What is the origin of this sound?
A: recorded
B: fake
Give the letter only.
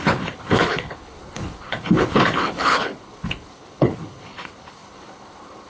B